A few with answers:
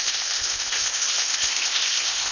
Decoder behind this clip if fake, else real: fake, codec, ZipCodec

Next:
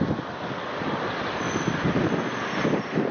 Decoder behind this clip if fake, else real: real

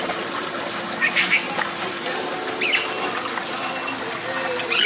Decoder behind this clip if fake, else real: real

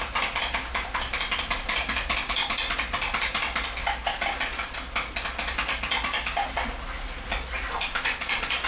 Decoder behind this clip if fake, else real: real